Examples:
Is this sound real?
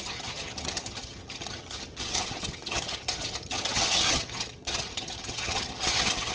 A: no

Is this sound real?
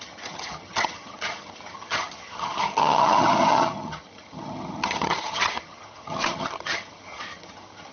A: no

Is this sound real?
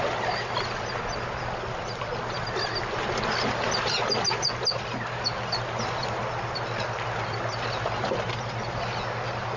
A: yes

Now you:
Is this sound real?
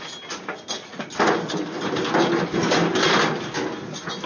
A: yes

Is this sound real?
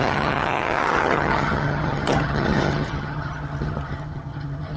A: no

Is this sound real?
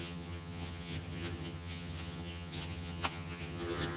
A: no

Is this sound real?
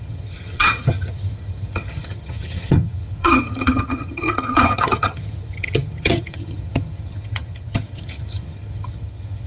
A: no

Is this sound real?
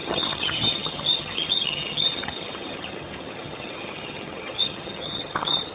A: no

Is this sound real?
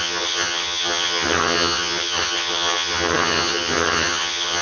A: no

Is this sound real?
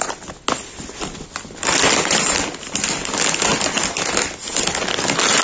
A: yes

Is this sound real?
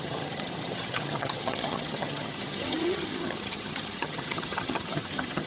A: no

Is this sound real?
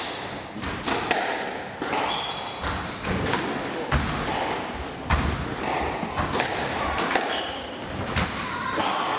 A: yes